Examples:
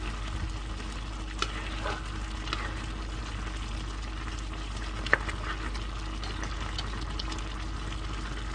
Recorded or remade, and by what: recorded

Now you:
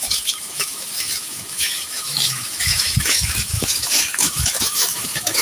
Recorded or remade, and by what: remade, autoencoder, DAC-VAE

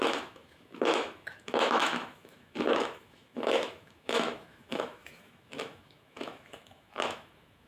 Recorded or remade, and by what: remade, autoencoder, DAC-VAE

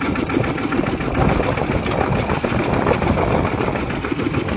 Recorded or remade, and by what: recorded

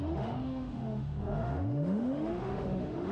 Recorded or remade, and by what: remade, autoencoder, DAC-VAE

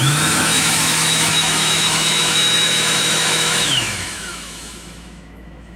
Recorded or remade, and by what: remade, autoencoder, DAC-VAE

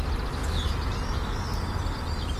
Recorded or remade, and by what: recorded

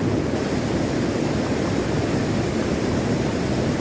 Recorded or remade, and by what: recorded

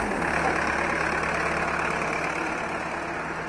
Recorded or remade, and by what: recorded